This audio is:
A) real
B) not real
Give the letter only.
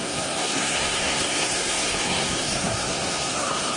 B